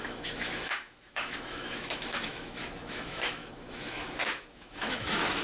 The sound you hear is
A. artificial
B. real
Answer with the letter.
A